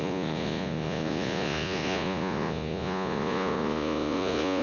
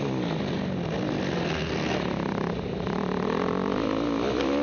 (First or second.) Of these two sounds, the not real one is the first